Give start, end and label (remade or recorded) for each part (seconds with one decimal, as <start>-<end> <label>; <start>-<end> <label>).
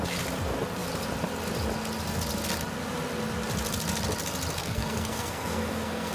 0.0-4.6 recorded; 4.6-6.1 remade